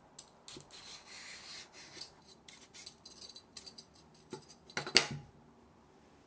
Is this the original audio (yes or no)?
yes